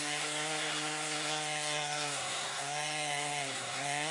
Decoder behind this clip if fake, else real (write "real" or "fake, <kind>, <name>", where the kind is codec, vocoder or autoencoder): fake, codec, SNAC